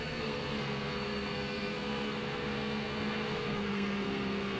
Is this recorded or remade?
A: remade